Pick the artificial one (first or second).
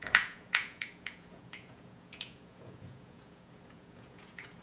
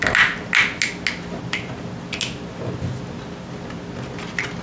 first